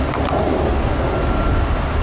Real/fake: real